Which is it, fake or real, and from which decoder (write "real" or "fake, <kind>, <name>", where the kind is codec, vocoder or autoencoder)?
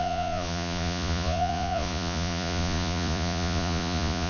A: fake, vocoder, Vocos